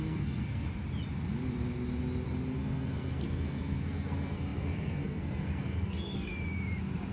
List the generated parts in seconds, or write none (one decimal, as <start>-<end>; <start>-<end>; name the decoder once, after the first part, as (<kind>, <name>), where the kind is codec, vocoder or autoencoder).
0.0-0.7 (codec, SNAC); 2.6-6.3